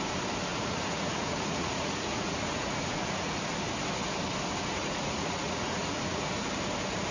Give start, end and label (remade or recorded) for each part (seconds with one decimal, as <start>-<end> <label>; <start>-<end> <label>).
0.0-0.5 recorded; 0.5-3.4 remade; 3.4-4.8 recorded; 4.8-6.3 remade; 6.3-7.1 recorded